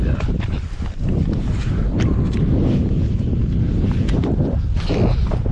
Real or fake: fake